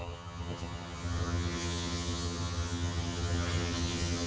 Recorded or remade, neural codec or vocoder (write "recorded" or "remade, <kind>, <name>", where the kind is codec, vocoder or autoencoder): remade, vocoder, HiFi-GAN